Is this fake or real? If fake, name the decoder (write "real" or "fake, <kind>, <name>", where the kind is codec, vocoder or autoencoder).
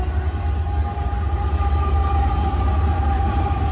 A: real